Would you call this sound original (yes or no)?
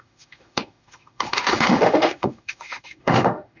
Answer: no